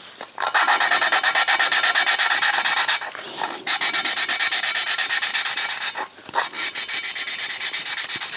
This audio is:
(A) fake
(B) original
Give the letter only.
B